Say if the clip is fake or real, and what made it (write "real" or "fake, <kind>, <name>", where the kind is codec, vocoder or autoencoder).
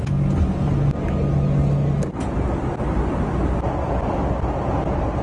real